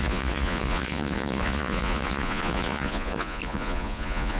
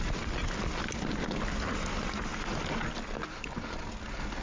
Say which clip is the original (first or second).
second